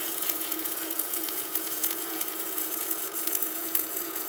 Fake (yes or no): yes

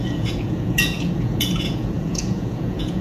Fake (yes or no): yes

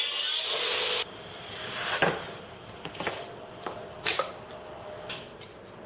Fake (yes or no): no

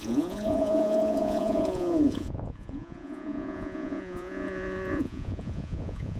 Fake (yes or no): yes